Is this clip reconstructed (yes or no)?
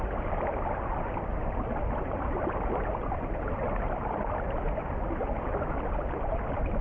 no